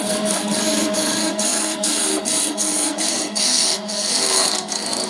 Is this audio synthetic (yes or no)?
yes